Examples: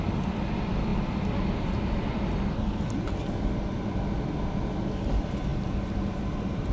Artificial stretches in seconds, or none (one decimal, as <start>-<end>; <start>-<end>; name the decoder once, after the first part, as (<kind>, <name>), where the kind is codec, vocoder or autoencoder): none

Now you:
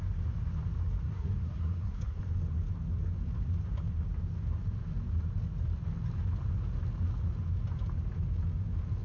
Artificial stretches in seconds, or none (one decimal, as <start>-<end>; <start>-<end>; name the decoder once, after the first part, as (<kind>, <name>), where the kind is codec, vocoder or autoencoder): 1.0-2.2 (codec, SNAC)

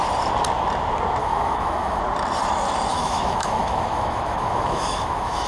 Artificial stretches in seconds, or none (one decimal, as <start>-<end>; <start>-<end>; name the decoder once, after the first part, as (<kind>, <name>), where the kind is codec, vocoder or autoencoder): 1.2-2.0 (autoencoder, DAC-VAE); 2.9-5.5

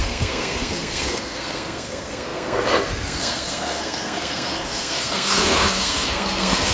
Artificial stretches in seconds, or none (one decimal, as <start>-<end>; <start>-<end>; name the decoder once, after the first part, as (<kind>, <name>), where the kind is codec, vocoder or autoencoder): 0.0-6.7 (codec, SNAC)

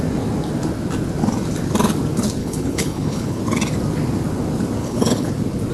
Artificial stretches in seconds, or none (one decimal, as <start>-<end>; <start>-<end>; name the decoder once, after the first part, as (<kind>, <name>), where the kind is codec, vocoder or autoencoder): 2.4-3.4 (codec, HILCodec); 4.8-5.3